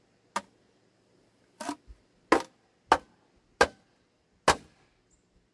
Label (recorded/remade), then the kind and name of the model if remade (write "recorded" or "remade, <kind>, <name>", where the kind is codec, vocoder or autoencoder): recorded